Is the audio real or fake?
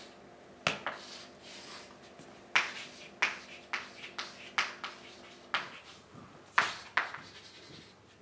real